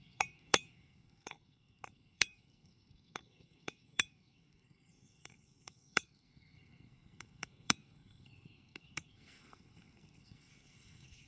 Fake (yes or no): yes